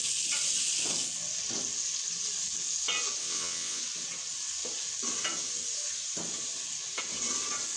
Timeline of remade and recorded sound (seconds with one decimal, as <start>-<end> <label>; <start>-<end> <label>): 0.0-3.2 recorded; 3.2-3.8 remade; 3.8-7.8 recorded